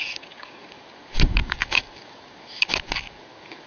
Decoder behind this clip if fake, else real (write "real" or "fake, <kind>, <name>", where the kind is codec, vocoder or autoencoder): fake, codec, DAC